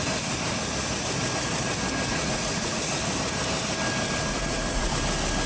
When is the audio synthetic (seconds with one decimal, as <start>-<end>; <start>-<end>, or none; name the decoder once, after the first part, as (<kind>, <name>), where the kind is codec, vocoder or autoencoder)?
2.1-2.8 (vocoder, Vocos); 4.3-4.9

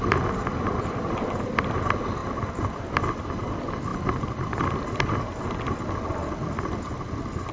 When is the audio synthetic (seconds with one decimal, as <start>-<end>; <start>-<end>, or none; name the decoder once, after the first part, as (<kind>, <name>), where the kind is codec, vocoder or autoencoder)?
2.2-3.0 (vocoder, BigVGAN v2)